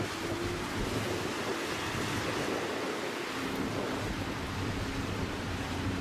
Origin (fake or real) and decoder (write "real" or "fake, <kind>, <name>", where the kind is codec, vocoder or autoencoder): real